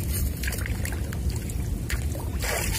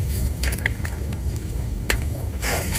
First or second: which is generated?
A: second